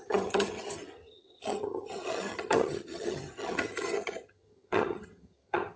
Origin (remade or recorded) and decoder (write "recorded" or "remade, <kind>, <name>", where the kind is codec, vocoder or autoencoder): remade, vocoder, HiFi-GAN